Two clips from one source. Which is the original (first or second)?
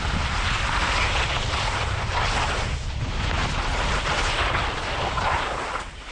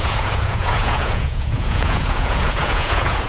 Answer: first